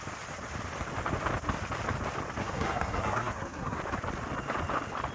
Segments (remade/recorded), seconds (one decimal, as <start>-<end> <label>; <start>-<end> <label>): 0.0-2.4 recorded; 2.4-3.8 remade; 3.8-5.1 recorded